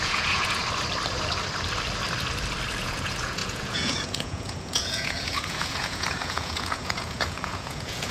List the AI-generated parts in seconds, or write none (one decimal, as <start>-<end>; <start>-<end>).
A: 0.0-0.6; 2.8-8.1